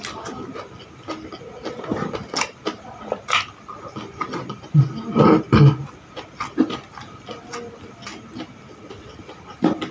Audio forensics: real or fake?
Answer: real